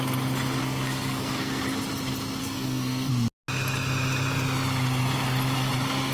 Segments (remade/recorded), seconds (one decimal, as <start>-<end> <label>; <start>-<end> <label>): 0.0-0.6 recorded; 0.6-1.6 remade; 1.6-2.4 recorded; 2.4-3.1 remade; 3.1-6.1 recorded